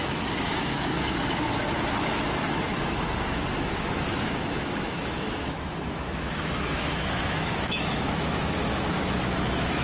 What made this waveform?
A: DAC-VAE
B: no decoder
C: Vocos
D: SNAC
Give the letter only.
A